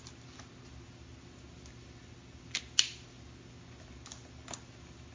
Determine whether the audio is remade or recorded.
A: recorded